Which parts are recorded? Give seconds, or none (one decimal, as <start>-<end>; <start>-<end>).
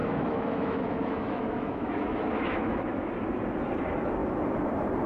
3.1-5.1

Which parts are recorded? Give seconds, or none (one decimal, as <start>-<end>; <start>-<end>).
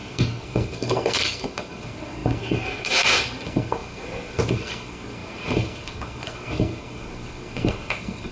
none